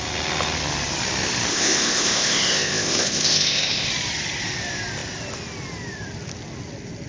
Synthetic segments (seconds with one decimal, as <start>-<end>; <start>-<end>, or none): 1.5-3.9